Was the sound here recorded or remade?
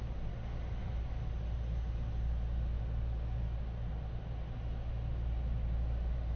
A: recorded